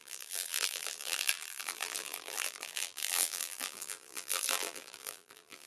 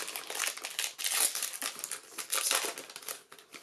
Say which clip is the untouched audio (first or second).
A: second